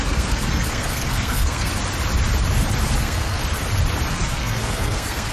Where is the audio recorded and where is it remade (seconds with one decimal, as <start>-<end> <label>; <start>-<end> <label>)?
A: 0.0-1.7 remade; 1.7-3.0 recorded; 3.0-3.4 remade; 3.4-4.1 recorded; 4.1-5.3 remade